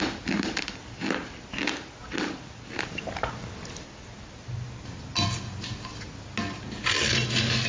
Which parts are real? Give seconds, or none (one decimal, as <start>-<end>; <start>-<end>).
0.0-7.7